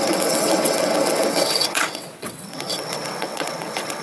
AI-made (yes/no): yes